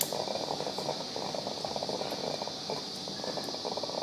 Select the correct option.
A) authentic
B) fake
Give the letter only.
A